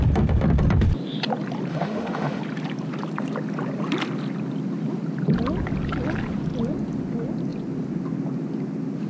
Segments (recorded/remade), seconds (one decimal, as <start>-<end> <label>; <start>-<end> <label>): 0.0-1.7 recorded; 1.7-2.4 remade; 2.4-9.1 recorded